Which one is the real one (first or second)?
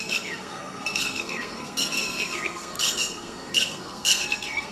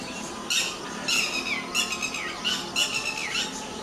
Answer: second